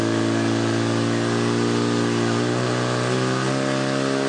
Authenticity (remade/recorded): recorded